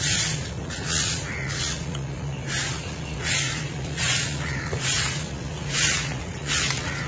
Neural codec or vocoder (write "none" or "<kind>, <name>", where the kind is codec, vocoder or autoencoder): vocoder, Vocos